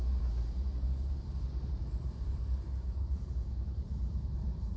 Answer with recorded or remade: remade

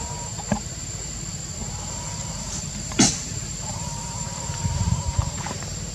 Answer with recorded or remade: remade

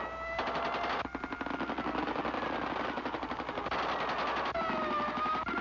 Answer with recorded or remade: recorded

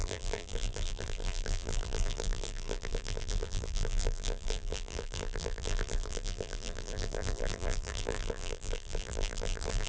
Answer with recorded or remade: remade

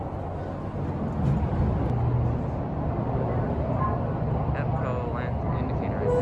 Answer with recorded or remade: recorded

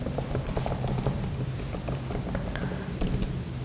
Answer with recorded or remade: recorded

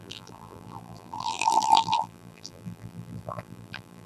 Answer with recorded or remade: remade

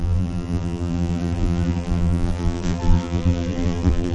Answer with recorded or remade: remade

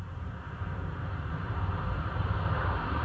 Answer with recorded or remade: remade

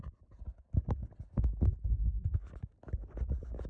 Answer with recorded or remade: recorded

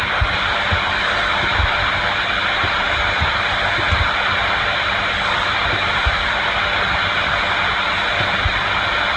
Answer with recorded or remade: recorded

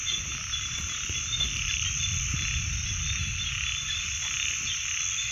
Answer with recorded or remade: recorded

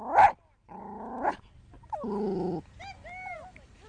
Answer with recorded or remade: recorded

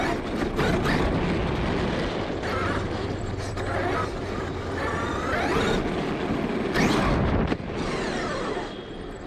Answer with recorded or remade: recorded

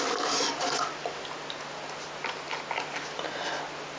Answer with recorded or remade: recorded